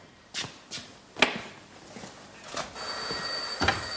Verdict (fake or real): real